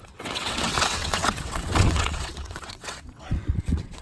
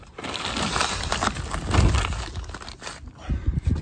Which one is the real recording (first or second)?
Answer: second